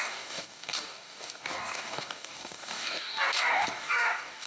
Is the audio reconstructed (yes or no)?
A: yes